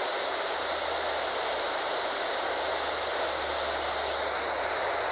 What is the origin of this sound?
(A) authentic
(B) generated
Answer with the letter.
A